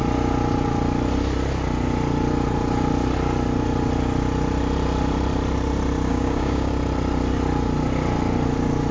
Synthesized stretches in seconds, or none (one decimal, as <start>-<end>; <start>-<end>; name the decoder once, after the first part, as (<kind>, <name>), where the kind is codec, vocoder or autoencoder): 6.1-6.7 (codec, DAC)